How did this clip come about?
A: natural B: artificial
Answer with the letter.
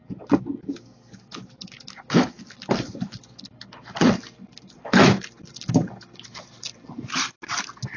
A